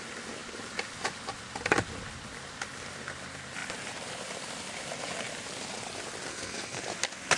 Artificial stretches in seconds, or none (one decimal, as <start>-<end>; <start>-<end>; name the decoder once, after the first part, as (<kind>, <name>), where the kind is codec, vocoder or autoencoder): 6.3-6.8 (codec, SNAC)